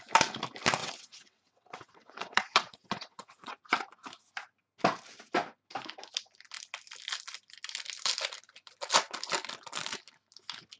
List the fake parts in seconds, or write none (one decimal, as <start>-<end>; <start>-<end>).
0.8-3.6